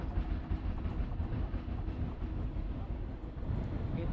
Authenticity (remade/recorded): recorded